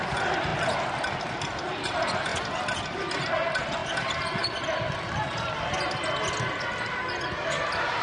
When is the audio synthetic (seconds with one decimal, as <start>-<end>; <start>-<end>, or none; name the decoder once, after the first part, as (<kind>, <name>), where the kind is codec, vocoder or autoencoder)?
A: none